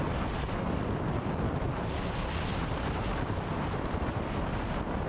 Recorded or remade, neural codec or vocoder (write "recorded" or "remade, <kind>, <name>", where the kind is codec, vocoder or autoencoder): recorded